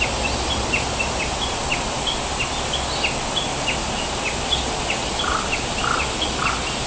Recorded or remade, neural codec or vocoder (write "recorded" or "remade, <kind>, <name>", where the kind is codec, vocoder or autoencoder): recorded